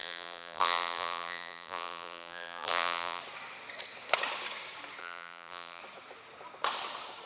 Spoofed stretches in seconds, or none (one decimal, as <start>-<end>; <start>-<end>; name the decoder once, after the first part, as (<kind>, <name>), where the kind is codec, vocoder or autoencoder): 0.0-3.2 (vocoder, BigVGAN v2); 5.0-5.8